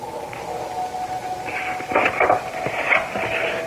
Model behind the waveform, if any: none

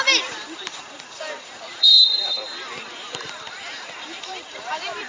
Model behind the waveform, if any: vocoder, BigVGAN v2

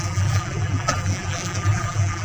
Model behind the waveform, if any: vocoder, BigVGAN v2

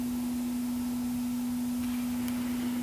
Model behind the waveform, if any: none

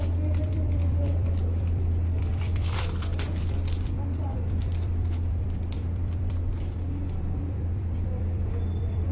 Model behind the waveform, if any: vocoder, BigVGAN v2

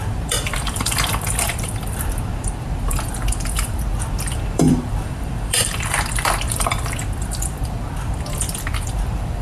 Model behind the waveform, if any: vocoder, BigVGAN v2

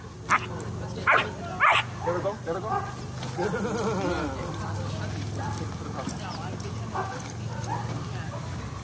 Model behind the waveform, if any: none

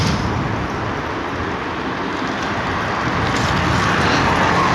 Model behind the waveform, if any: none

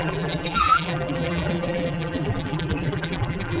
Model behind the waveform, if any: vocoder, BigVGAN v2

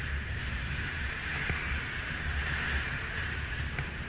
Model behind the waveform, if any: vocoder, BigVGAN v2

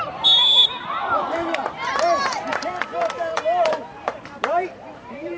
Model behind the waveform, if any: vocoder, BigVGAN v2